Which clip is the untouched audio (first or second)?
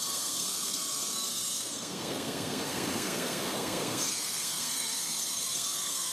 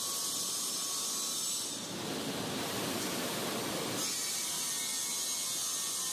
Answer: second